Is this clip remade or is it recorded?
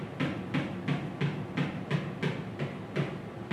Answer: recorded